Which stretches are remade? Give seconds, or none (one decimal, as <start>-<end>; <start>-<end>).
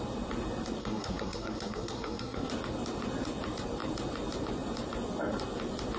0.8-2.5